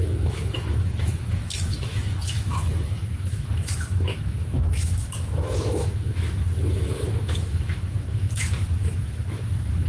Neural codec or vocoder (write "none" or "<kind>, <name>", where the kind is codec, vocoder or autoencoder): autoencoder, DAC-VAE